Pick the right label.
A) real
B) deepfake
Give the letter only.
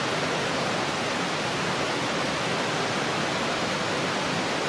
A